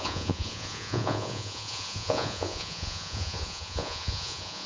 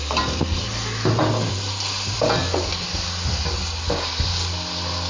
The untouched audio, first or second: second